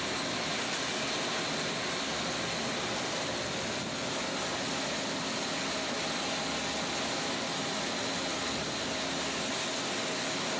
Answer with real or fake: real